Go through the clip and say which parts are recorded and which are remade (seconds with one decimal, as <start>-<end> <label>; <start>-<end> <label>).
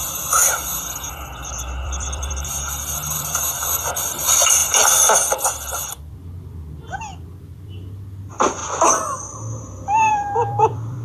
0.0-0.4 remade; 0.4-1.1 recorded; 1.1-8.6 remade; 8.6-10.1 recorded; 10.1-11.0 remade